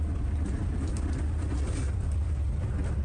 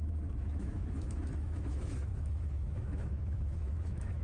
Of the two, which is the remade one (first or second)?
second